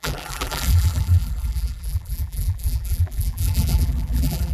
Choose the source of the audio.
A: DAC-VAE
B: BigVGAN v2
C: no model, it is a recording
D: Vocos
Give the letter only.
B